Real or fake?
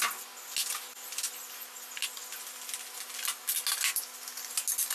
real